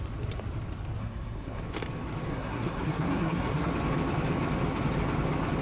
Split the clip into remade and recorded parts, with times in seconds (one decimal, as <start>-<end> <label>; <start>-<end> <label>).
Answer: 0.0-1.0 recorded; 1.0-1.6 remade; 1.6-2.3 recorded; 2.3-3.7 remade; 3.7-5.6 recorded